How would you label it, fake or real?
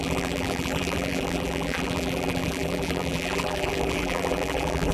fake